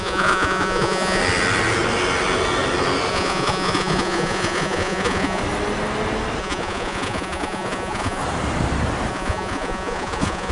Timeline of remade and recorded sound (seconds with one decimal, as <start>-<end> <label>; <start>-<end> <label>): 0.0-1.2 remade; 1.2-3.1 recorded; 3.1-5.4 remade; 5.4-6.4 recorded; 6.4-8.2 remade; 8.2-9.1 recorded; 9.1-10.5 remade